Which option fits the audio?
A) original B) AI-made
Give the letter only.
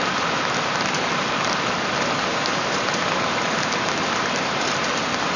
A